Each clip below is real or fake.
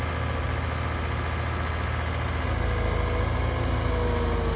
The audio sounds real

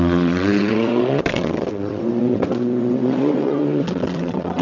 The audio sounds fake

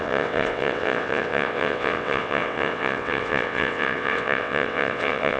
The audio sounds fake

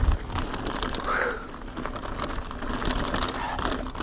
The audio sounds real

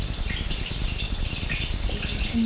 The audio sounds real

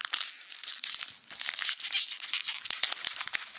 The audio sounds real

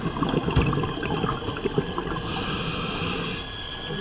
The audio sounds real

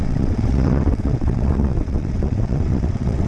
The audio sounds fake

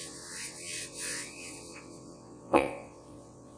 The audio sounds fake